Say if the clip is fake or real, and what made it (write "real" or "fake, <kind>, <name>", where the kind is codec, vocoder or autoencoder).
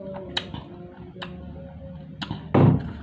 real